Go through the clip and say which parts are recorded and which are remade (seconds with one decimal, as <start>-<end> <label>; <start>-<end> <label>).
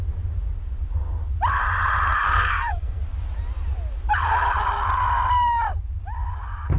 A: 0.0-2.2 recorded; 2.2-3.0 remade; 3.0-6.8 recorded